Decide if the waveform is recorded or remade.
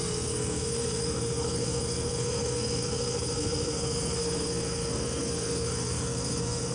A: remade